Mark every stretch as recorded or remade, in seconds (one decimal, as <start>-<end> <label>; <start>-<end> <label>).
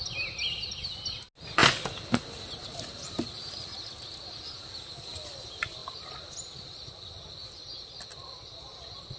0.0-5.8 recorded; 5.8-8.0 remade; 8.0-9.2 recorded